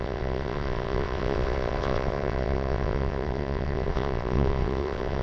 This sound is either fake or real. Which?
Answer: fake